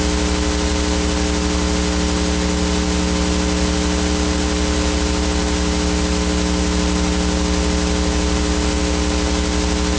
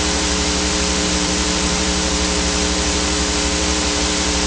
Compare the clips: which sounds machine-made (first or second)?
second